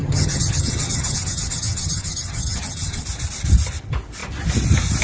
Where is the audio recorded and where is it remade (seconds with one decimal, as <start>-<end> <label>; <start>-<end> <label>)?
0.0-3.0 remade; 3.0-5.0 recorded